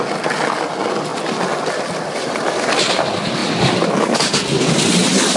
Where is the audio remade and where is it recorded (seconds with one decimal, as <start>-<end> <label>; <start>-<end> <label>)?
0.0-5.4 recorded